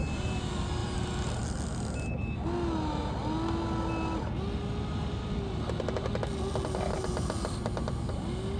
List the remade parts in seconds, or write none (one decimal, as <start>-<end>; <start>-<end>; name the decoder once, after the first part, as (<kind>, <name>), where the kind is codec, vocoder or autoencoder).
none